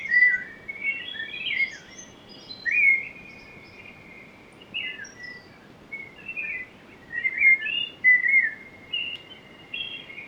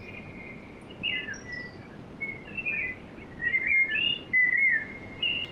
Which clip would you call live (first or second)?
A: second